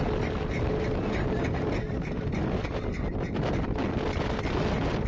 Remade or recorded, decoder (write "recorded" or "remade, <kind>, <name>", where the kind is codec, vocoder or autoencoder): recorded